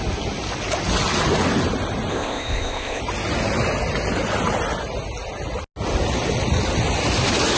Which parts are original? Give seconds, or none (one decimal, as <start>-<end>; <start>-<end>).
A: 0.0-2.1; 3.0-7.6